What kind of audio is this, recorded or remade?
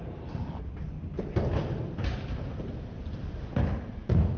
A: recorded